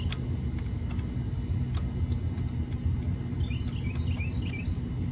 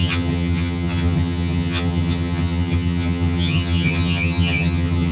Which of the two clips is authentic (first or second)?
first